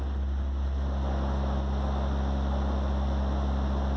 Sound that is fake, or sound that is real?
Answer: real